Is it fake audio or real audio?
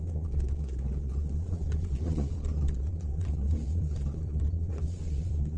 fake